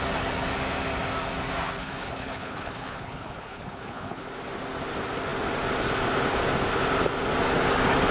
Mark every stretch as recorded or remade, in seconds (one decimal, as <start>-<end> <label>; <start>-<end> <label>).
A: 0.0-1.8 recorded; 1.8-4.2 remade; 4.2-8.1 recorded

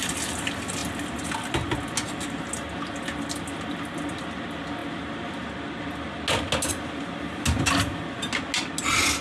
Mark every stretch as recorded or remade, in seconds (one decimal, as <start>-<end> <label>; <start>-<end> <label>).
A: 0.0-9.2 recorded

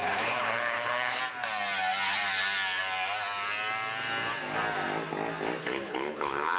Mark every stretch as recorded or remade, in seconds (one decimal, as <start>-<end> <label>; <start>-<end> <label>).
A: 0.0-1.2 remade; 1.2-5.6 recorded; 5.6-6.6 remade

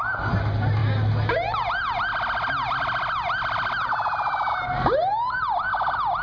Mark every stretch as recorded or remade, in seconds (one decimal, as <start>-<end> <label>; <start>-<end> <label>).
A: 0.0-6.2 recorded

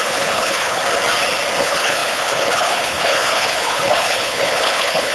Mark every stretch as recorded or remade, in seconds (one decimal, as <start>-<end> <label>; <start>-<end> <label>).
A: 0.0-0.8 remade; 0.8-1.6 recorded; 1.6-5.1 remade

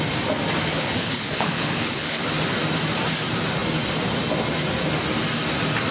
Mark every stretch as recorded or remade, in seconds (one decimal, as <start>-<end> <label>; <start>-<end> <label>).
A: 0.0-0.7 recorded; 0.7-2.2 remade; 2.2-5.9 recorded

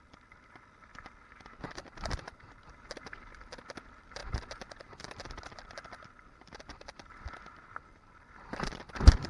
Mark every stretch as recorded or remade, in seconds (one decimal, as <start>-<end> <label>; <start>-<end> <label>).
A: 0.0-9.3 recorded

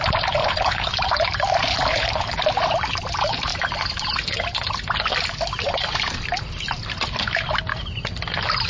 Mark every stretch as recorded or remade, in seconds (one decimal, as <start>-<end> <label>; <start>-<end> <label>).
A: 0.0-0.4 recorded; 0.4-0.9 remade; 0.9-1.7 recorded; 1.7-2.4 remade; 2.4-8.7 recorded